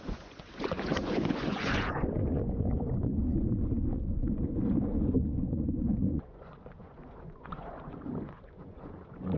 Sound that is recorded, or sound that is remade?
remade